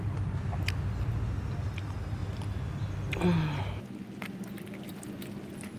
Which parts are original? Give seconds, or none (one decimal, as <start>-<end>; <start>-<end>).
0.0-5.8